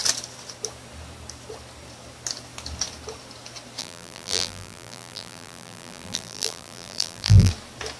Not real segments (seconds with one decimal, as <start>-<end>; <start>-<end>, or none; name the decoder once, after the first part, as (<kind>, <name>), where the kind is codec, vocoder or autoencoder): 3.8-7.5 (vocoder, BigVGAN v2)